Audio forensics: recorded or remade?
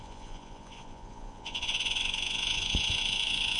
remade